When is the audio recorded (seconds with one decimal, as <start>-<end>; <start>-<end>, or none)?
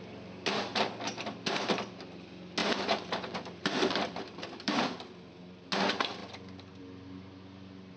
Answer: 0.0-2.6; 4.8-8.0